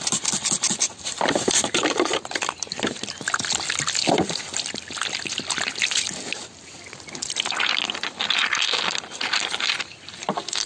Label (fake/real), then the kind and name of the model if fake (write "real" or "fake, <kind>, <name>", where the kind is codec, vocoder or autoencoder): real